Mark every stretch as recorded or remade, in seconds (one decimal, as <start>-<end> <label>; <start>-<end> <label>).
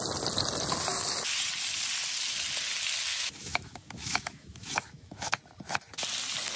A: 0.0-3.1 recorded; 3.1-5.4 remade; 5.4-6.6 recorded